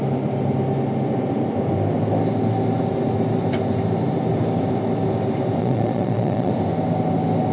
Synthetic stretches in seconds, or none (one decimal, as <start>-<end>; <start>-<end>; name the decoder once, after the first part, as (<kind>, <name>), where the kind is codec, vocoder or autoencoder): 5.6-6.5 (vocoder, Vocos)